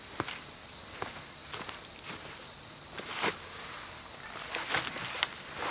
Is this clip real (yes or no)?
yes